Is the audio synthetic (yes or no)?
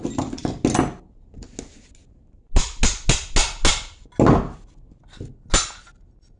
no